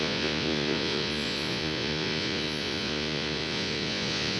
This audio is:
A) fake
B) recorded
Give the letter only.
A